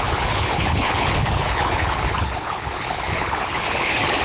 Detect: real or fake fake